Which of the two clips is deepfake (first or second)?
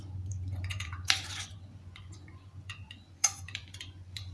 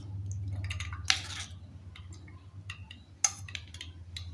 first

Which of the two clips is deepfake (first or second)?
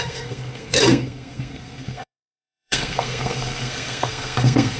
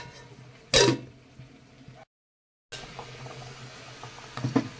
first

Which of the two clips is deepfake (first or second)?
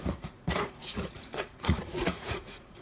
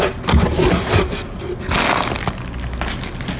first